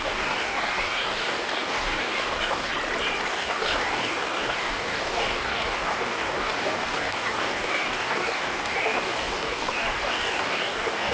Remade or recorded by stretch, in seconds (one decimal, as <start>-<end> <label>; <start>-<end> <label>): 0.0-2.7 remade; 2.7-3.3 recorded; 3.3-11.1 remade

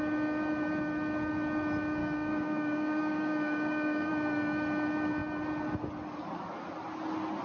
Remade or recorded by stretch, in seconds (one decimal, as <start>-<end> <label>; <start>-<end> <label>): 0.0-2.0 recorded; 2.0-4.1 remade; 4.1-7.4 recorded

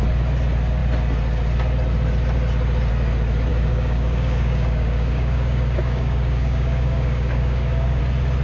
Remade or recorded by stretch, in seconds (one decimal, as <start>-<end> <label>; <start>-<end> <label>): 0.0-3.5 recorded; 3.5-8.0 remade; 8.0-8.4 recorded

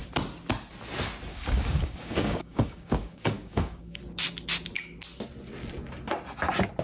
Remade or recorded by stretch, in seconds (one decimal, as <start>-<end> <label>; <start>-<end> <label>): 0.0-1.3 recorded; 1.3-4.0 remade; 4.0-6.8 recorded

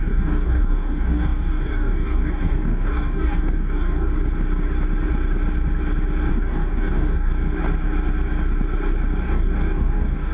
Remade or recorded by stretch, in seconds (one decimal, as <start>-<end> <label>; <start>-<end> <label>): 0.0-4.1 remade; 4.1-6.3 recorded; 6.3-7.3 remade; 7.3-9.2 recorded; 9.2-10.3 remade

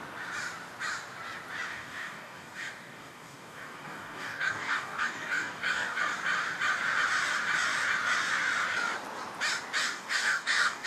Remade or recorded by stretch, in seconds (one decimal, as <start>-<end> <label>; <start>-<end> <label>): 0.0-1.7 recorded; 1.7-6.0 remade; 6.0-9.8 recorded; 9.8-10.9 remade